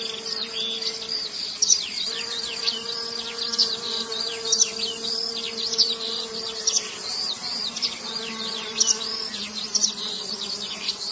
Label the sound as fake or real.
real